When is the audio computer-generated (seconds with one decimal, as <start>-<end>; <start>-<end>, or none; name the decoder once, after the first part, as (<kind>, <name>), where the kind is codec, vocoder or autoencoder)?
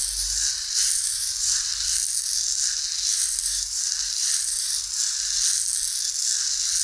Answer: 0.0-1.7 (vocoder, BigVGAN v2); 3.1-4.9